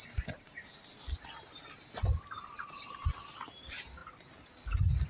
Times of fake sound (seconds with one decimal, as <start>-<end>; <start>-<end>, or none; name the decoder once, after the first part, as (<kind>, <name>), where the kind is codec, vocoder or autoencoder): 0.0-0.8 (vocoder, BigVGAN v2); 3.6-4.0